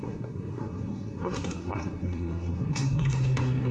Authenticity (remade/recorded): remade